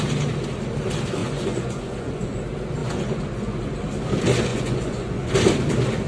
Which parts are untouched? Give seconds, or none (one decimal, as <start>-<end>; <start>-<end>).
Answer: 0.0-1.2; 2.4-2.8; 3.8-4.5; 5.3-6.1